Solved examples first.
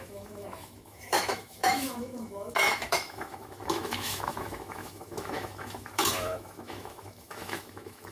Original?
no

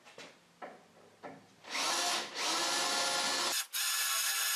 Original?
yes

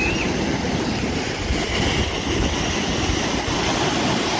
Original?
yes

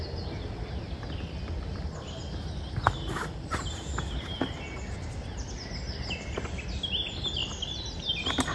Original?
yes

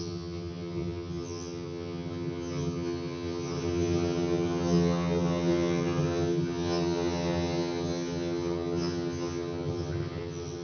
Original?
no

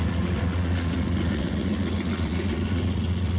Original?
no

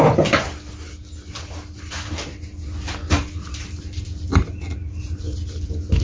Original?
yes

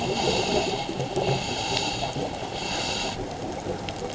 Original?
no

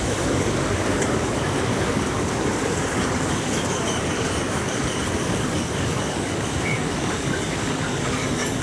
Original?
no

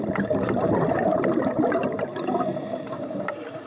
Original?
no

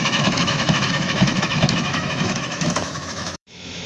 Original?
no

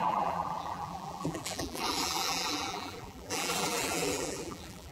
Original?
no